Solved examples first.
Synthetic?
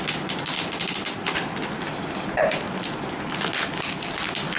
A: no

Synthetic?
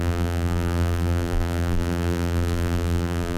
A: yes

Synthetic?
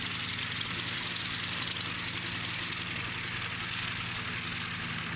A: no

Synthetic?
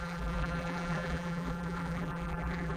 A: yes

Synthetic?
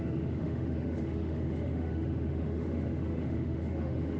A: yes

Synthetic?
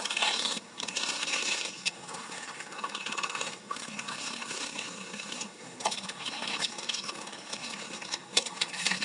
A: yes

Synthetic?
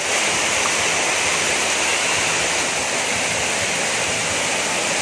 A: no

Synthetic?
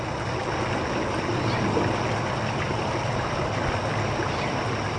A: no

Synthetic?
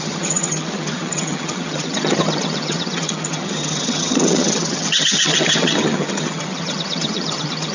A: yes